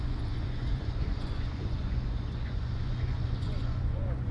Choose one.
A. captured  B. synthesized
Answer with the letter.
B